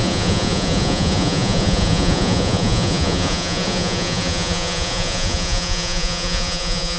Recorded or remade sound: remade